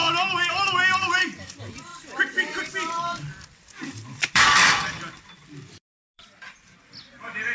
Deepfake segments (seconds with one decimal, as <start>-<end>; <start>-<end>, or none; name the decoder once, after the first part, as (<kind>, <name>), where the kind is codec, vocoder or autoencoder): 0.5-7.5 (vocoder, BigVGAN v2)